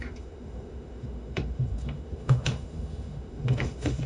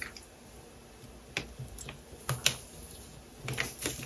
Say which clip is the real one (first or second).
second